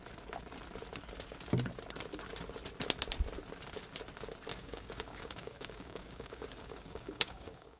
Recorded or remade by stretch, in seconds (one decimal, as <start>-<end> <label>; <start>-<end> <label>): 0.0-4.5 recorded; 4.5-7.8 remade